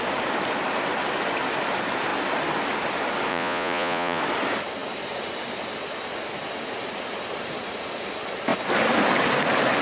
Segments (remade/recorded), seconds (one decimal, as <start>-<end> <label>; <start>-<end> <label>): 0.0-3.3 recorded; 3.3-4.2 remade; 4.2-9.8 recorded